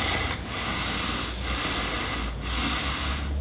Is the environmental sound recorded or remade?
recorded